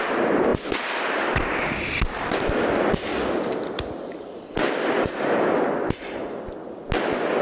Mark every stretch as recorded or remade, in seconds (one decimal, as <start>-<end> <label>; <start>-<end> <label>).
0.0-0.5 recorded; 0.5-2.5 remade; 2.5-3.1 recorded; 3.1-4.7 remade; 4.7-7.4 recorded

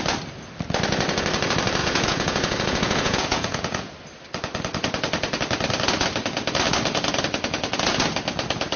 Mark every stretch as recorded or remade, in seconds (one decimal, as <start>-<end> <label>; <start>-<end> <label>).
0.0-1.8 recorded; 1.8-3.9 remade; 3.9-8.8 recorded